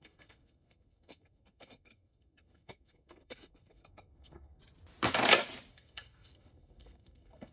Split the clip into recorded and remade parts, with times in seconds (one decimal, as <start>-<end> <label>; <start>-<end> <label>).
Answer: 0.0-4.6 remade; 4.6-5.7 recorded; 5.7-7.5 remade